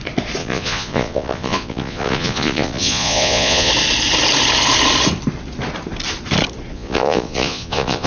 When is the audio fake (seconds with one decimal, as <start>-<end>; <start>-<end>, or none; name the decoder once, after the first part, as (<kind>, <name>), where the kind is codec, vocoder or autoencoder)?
0.4-3.7 (vocoder, Vocos); 6.7-8.1